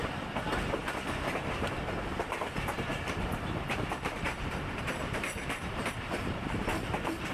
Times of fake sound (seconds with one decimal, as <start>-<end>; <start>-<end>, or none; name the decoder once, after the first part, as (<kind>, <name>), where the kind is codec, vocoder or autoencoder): 2.9-7.3 (vocoder, BigVGAN v2)